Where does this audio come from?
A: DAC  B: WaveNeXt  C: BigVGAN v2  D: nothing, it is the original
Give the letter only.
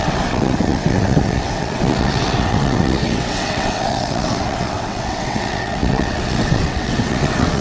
B